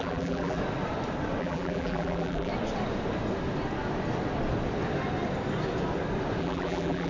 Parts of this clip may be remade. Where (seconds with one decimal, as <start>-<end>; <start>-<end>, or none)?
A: 0.0-0.6; 1.4-2.5; 6.4-7.1